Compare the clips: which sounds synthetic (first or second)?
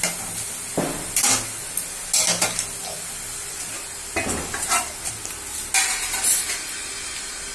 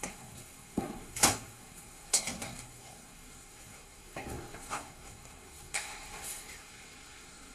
second